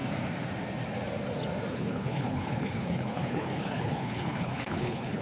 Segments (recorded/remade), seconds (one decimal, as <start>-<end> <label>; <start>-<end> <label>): 0.0-1.7 recorded; 1.7-5.2 remade